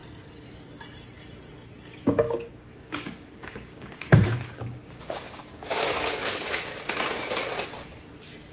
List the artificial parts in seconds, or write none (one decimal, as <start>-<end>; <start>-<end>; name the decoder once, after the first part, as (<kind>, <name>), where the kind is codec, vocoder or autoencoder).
1.9-6.6 (codec, DAC)

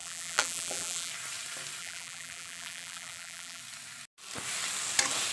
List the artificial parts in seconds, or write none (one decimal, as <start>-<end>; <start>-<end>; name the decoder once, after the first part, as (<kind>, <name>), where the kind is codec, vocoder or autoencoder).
0.0-1.1 (vocoder, BigVGAN v2); 1.8-3.6

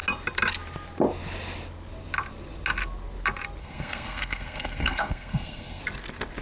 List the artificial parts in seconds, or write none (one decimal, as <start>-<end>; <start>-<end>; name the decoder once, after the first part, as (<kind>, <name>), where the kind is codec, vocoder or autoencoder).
3.6-5.8 (codec, SNAC)

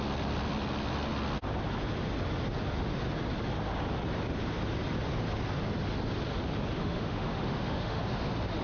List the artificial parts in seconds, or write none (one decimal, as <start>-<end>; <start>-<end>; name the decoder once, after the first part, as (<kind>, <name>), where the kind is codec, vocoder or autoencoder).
6.8-8.0 (autoencoder, DAC-VAE)

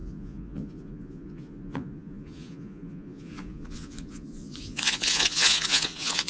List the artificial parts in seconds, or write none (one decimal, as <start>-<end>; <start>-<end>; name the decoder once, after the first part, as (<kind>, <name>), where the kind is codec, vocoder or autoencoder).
0.0-6.3 (vocoder, Vocos)

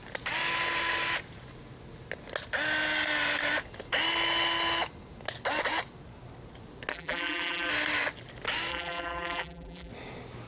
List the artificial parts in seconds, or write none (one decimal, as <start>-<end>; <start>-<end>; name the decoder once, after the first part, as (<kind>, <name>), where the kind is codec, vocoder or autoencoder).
6.9-7.7 (vocoder, BigVGAN v2); 8.7-9.9